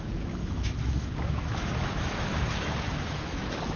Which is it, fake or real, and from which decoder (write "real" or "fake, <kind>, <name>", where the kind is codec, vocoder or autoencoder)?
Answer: fake, autoencoder, DAC-VAE